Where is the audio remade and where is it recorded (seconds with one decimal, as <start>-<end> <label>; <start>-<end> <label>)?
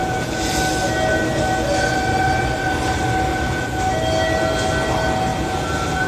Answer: 0.0-0.6 remade; 0.6-3.3 recorded; 3.3-3.8 remade; 3.8-5.3 recorded; 5.3-6.1 remade